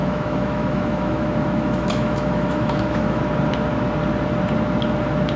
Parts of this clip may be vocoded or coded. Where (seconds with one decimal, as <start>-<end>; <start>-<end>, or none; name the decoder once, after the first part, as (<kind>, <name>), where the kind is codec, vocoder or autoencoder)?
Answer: 0.0-3.2 (autoencoder, DAC-VAE)

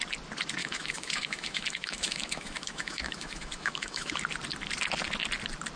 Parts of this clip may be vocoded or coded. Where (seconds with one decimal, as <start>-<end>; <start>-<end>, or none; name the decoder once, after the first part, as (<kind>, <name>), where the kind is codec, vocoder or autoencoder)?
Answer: 0.6-4.1 (autoencoder, DAC-VAE)